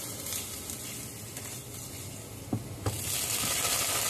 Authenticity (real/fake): real